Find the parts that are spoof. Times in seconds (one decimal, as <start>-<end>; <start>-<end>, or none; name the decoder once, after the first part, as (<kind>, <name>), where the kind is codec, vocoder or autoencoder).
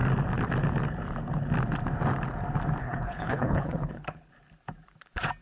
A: 2.8-4.3 (codec, HILCodec)